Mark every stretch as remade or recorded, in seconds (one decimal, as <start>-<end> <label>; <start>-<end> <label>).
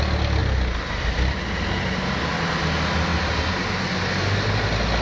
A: 0.0-5.0 recorded